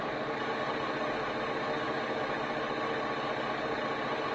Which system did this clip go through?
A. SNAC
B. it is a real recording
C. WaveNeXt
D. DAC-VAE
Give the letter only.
B